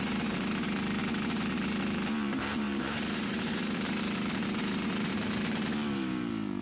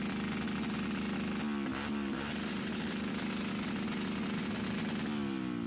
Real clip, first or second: second